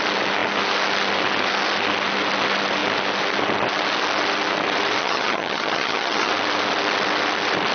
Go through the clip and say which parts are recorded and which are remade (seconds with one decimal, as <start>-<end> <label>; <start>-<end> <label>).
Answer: 0.0-5.0 recorded; 5.0-6.3 remade; 6.3-7.7 recorded